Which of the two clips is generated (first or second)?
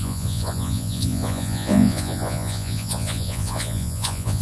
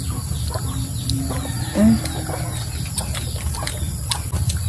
first